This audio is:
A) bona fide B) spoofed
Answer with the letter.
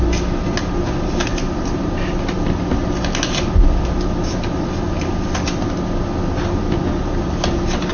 A